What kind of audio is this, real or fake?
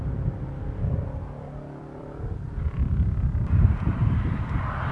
fake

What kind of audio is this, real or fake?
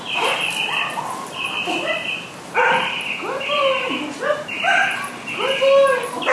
real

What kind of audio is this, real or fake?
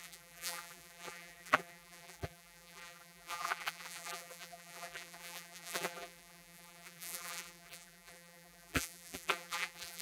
fake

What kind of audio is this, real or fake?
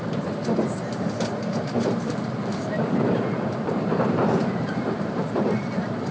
fake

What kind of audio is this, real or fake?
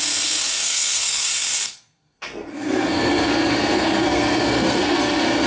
fake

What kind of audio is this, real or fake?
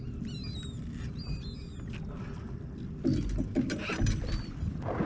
real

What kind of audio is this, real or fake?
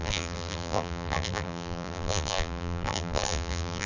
fake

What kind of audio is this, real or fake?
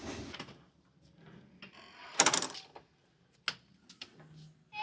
real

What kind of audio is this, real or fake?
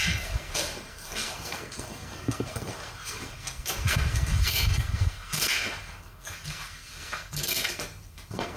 fake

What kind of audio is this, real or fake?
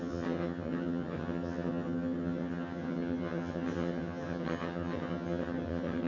fake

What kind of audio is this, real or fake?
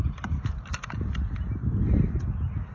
real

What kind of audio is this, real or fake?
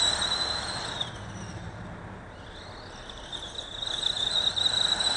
real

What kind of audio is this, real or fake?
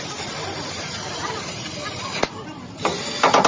real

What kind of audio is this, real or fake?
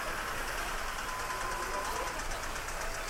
real